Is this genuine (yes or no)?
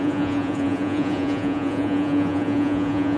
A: no